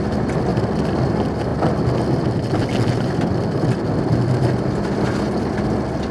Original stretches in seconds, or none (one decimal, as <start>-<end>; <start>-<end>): 0.0-6.1